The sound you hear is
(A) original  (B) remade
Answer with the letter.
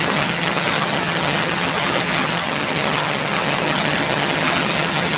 B